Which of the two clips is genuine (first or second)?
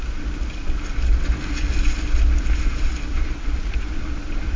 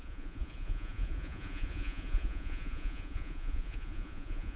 first